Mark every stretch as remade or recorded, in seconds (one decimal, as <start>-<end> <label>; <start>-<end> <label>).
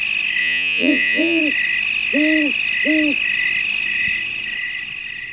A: 0.0-0.4 recorded; 0.4-1.4 remade; 1.4-5.3 recorded